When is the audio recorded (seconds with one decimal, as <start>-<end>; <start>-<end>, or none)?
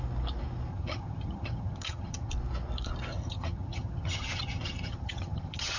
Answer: 0.0-0.7; 2.3-3.1